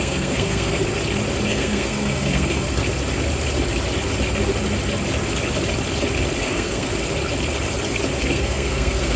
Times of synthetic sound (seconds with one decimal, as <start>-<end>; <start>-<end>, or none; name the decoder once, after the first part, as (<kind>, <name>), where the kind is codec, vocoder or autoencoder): 0.0-0.8 (codec, SNAC); 1.5-2.8; 6.4-6.9; 8.3-9.2